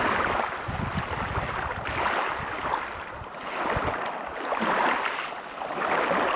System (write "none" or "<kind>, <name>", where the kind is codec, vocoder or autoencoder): none